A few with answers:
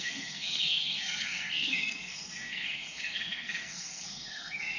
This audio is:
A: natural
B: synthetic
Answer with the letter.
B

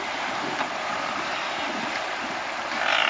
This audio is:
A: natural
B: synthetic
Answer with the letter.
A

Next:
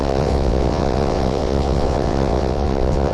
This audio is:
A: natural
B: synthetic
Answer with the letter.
B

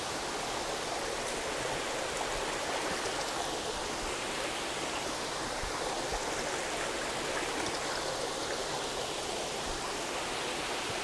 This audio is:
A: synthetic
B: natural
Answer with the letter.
B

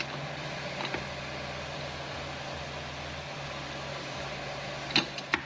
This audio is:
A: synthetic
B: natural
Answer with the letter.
B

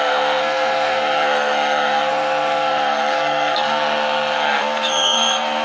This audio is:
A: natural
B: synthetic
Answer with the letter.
B